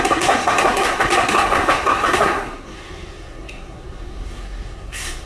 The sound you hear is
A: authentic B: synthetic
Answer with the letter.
B